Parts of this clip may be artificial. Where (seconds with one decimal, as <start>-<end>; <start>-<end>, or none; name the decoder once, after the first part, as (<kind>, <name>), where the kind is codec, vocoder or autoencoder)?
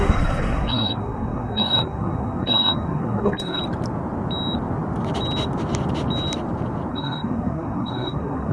0.0-3.6 (codec, SNAC); 6.9-8.5